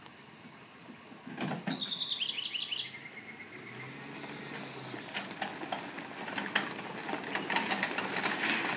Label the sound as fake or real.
real